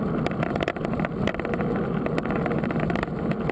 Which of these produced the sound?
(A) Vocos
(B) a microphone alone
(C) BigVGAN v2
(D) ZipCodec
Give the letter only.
B